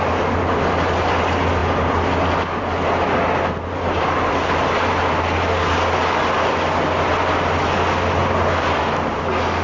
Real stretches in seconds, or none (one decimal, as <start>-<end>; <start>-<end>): 0.0-9.6